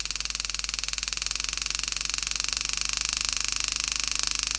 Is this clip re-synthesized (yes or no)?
no